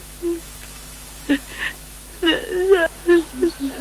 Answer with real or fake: fake